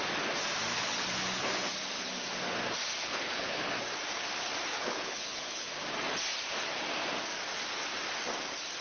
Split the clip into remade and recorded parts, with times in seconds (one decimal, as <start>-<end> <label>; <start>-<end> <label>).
0.0-0.7 recorded; 0.7-1.7 remade; 1.7-3.0 recorded; 3.0-3.7 remade; 3.7-4.7 recorded; 4.7-5.7 remade; 5.7-8.8 recorded